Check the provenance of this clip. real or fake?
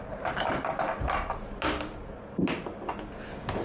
real